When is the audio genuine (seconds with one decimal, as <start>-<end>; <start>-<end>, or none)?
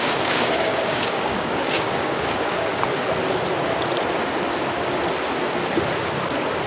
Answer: 2.7-6.7